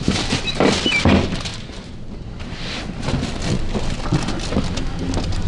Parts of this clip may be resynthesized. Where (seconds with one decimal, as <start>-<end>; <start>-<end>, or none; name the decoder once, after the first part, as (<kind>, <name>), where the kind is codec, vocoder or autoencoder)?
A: none